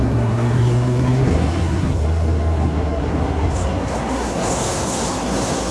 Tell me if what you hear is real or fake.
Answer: fake